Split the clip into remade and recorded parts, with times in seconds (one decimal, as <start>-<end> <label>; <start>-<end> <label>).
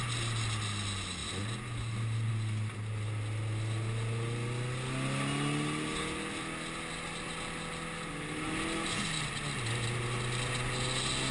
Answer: 0.0-11.3 recorded